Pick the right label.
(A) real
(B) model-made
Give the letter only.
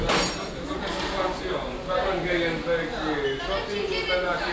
A